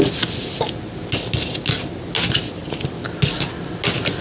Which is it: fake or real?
real